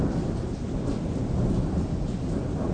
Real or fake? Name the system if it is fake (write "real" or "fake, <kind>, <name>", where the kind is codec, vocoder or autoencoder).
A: real